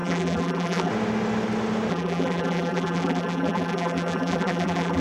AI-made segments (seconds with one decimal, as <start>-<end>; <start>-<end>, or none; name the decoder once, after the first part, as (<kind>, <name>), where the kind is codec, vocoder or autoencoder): 0.0-0.9 (vocoder, BigVGAN v2); 1.9-5.0